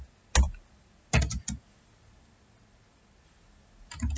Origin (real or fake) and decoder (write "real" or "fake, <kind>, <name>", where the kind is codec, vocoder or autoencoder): real